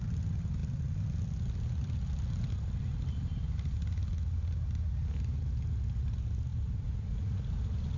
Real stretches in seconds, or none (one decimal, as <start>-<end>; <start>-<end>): 0.0-8.0

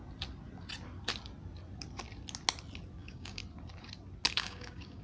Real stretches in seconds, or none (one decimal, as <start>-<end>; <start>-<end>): 0.0-3.0; 3.4-4.3

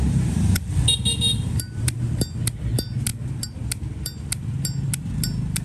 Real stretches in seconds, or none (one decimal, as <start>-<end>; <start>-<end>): 0.0-5.6

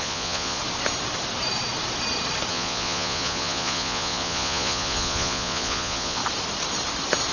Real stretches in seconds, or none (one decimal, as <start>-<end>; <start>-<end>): 0.6-2.5; 6.2-7.3

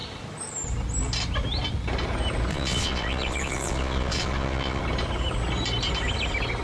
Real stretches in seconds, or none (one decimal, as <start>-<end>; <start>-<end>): 0.0-2.5; 4.8-6.6

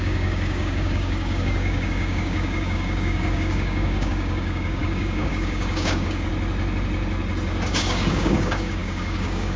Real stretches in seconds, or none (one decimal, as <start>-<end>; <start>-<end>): 6.3-7.7